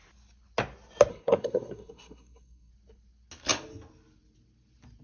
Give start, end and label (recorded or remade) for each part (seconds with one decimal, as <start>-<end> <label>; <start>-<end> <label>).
0.0-1.1 recorded; 1.1-2.7 remade; 2.7-5.0 recorded